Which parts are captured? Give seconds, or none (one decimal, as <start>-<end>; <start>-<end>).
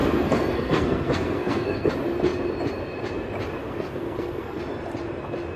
1.9-3.6; 4.6-5.6